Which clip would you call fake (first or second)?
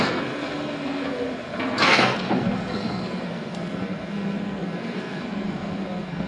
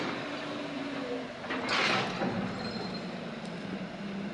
first